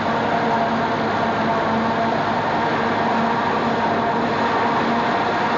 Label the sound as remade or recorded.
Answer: recorded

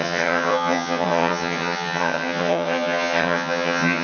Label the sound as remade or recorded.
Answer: remade